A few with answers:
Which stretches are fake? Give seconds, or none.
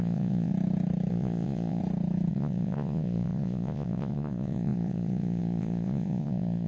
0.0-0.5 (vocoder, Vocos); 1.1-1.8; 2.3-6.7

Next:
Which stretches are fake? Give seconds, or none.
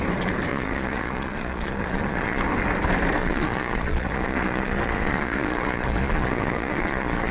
0.5-2.4 (vocoder, Vocos); 3.2-7.3